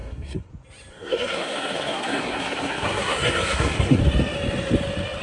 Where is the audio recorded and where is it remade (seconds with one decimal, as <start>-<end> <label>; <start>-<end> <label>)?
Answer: 0.0-0.5 remade; 0.5-0.9 recorded; 0.9-4.0 remade; 4.0-5.2 recorded